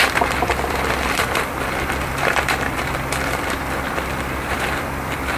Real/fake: fake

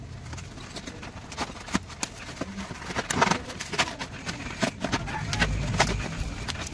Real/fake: real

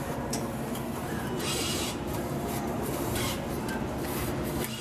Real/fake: fake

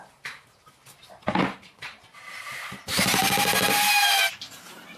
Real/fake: fake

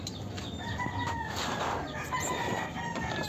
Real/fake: real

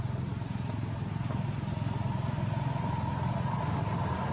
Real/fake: real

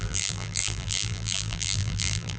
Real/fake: fake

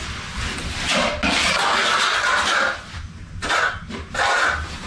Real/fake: real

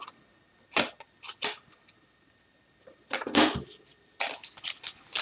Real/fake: real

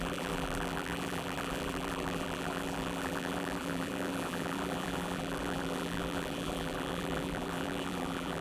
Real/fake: fake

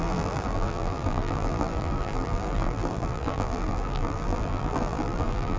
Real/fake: fake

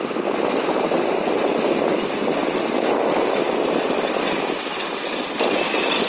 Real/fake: real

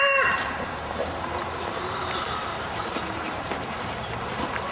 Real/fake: fake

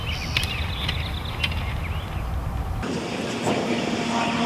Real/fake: real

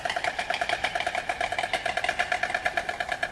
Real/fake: real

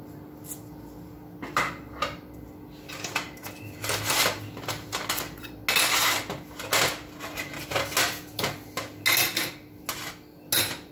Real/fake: real